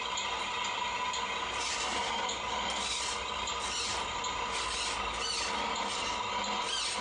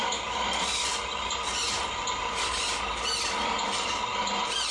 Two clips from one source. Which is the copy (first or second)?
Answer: second